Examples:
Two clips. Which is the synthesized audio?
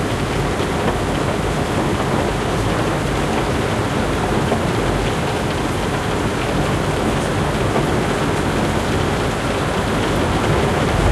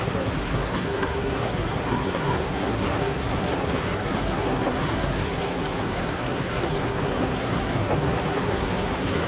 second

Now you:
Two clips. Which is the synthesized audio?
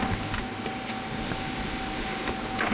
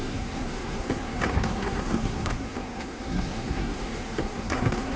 second